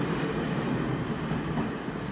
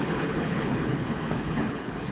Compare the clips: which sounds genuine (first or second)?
first